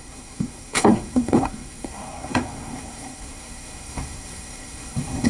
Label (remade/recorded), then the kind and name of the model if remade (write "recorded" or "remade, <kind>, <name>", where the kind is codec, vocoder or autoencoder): remade, codec, SNAC